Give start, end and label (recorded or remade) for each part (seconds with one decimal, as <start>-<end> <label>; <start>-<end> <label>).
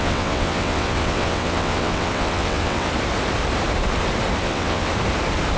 0.0-2.9 remade; 2.9-4.4 recorded; 4.4-4.9 remade; 4.9-5.6 recorded